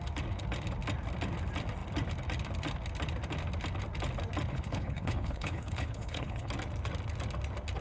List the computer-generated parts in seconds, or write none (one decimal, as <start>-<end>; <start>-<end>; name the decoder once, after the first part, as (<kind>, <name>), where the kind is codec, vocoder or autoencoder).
4.5-6.5 (codec, HILCodec)